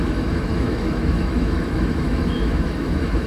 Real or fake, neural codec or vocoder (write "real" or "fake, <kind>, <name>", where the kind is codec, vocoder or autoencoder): fake, autoencoder, DAC-VAE